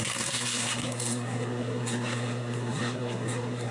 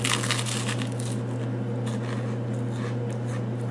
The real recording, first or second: second